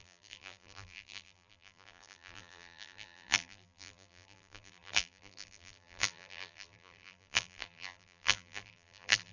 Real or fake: fake